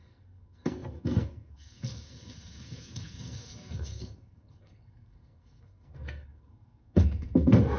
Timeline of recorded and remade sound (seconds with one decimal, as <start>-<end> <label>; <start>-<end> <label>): 0.0-7.8 remade